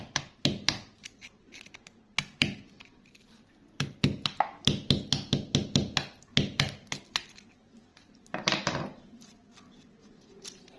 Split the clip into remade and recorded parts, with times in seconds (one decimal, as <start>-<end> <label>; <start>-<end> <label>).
0.0-7.9 recorded; 7.9-8.8 remade; 8.8-10.8 recorded